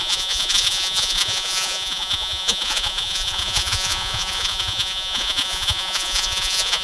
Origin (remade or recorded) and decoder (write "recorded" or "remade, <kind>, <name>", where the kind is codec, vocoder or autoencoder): remade, vocoder, Vocos